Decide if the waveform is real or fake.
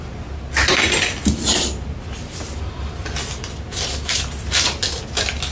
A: real